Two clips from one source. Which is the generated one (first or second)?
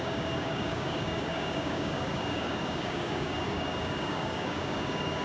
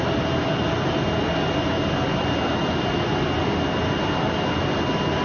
first